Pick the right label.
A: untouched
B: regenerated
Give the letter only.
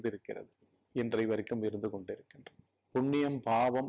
A